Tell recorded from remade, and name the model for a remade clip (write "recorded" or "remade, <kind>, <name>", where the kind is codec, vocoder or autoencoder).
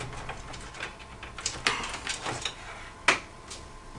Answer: recorded